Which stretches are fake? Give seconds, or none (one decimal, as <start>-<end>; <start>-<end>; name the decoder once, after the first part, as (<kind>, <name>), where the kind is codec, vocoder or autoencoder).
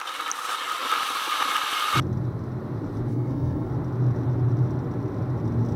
3.1-3.7 (codec, SNAC)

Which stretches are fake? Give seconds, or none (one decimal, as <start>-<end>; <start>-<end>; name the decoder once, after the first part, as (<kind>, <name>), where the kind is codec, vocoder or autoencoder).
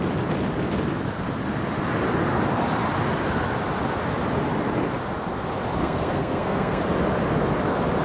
5.8-6.8 (codec, SNAC)